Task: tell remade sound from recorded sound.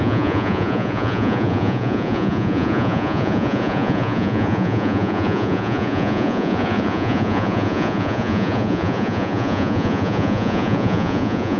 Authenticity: remade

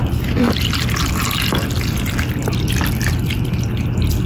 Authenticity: recorded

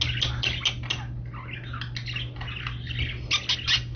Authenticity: recorded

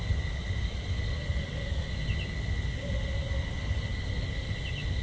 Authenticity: recorded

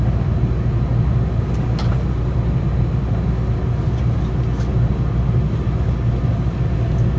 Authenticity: recorded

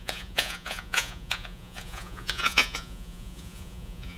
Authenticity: remade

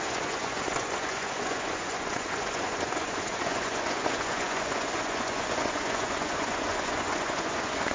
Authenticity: remade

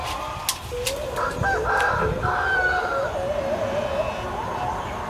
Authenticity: recorded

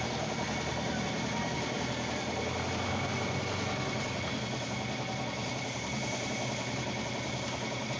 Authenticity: recorded